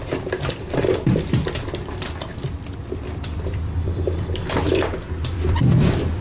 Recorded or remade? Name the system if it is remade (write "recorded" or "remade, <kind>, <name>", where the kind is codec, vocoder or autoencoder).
remade, vocoder, BigVGAN v2